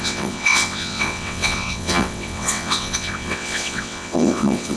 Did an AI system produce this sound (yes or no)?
yes